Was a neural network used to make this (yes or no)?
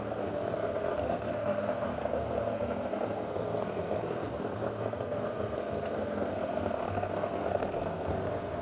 yes